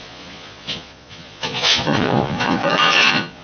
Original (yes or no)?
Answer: no